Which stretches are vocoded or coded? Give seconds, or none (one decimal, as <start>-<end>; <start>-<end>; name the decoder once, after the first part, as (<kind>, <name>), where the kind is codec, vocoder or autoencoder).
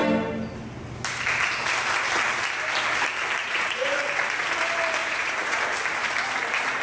3.4-4.0 (vocoder, Vocos); 5.0-5.6